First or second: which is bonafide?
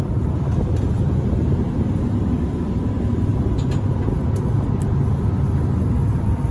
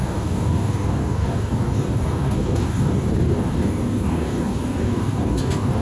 first